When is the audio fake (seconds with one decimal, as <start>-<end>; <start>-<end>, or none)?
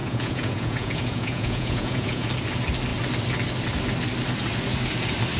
0.0-2.3